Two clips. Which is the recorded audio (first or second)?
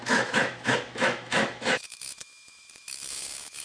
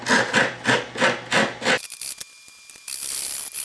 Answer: second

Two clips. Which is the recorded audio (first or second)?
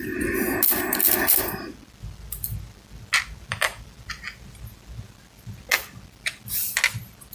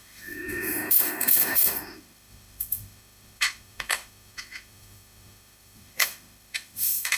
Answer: first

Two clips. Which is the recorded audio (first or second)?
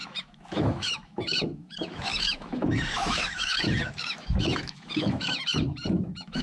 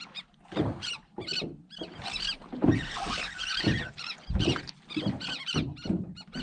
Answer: second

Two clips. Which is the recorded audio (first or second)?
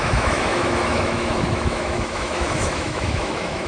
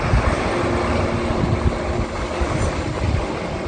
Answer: second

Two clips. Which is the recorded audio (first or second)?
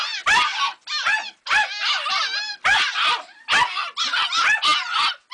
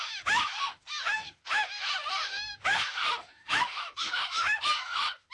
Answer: first